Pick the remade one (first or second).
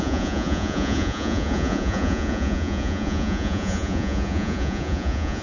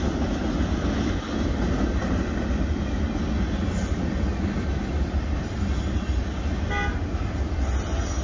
first